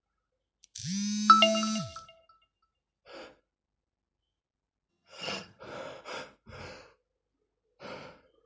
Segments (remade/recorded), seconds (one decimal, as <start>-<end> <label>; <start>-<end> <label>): 0.0-4.9 recorded; 4.9-5.6 remade; 5.6-8.5 recorded